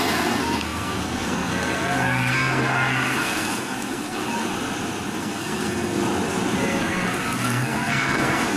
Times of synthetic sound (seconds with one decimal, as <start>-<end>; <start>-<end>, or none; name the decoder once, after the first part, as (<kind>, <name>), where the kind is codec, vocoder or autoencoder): 0.0-4.5 (codec, SNAC); 5.2-6.0; 6.6-8.6

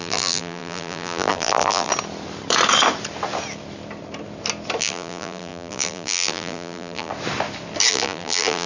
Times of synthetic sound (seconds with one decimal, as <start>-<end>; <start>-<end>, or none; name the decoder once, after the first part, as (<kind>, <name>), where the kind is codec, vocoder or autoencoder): 0.0-1.9 (vocoder, BigVGAN v2); 4.8-7.1; 7.9-8.7

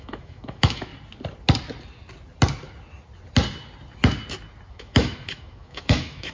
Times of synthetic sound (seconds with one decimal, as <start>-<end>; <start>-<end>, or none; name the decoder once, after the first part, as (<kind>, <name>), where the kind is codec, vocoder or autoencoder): 0.0-0.9 (autoencoder, DAC-VAE); 4.7-6.3

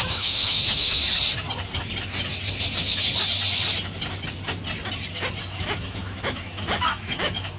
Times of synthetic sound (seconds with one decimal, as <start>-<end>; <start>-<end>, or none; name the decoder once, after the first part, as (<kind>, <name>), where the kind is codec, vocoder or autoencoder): 0.0-1.0 (autoencoder, DAC-VAE); 5.4-7.6

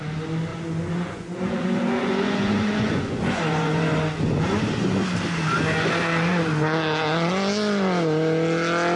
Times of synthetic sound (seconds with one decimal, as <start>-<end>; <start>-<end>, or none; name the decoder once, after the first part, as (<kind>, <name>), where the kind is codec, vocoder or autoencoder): 0.5-3.9 (vocoder, Vocos)

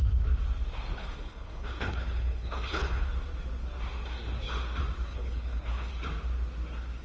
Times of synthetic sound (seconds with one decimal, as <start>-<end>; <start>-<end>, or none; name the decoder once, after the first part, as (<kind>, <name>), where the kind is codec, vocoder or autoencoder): 0.9-3.0 (codec, HILCodec); 5.1-5.9

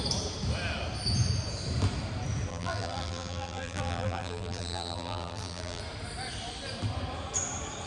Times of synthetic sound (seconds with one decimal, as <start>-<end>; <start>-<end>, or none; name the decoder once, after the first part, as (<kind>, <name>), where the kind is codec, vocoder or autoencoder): 2.5-5.8 (vocoder, BigVGAN v2)

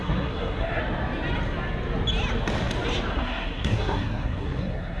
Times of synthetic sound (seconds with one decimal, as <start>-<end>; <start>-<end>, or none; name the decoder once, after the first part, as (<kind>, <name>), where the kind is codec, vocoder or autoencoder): 0.0-0.8 (codec, SNAC); 3.1-5.0